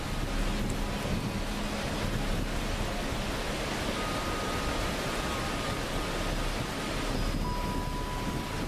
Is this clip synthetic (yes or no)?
no